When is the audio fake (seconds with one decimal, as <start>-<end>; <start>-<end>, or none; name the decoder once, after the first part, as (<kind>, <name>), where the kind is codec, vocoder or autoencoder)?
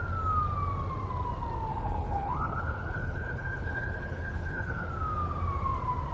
1.7-4.9 (codec, HILCodec)